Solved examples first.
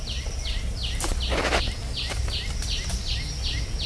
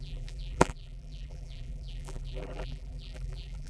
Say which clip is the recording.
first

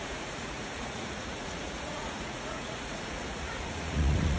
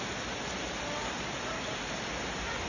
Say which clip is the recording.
second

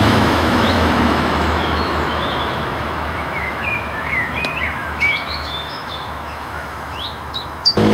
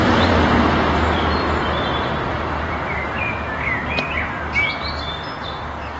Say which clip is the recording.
second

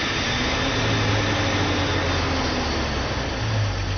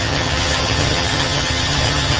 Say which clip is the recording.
first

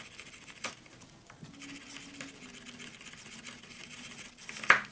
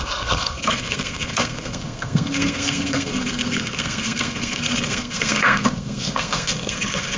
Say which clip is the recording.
first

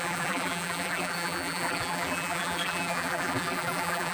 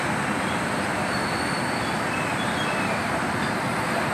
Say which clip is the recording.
second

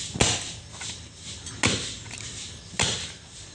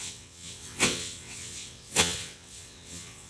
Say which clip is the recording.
first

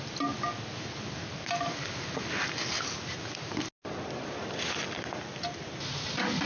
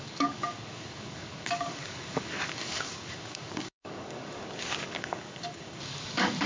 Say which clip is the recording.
first